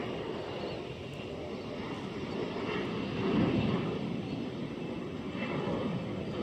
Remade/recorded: recorded